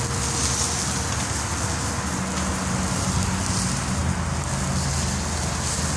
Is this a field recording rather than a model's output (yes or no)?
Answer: yes